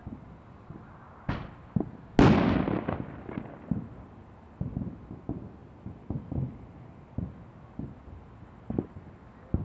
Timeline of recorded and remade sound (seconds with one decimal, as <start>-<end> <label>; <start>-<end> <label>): 0.0-9.6 recorded